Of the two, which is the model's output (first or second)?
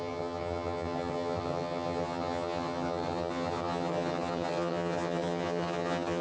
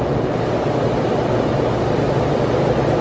first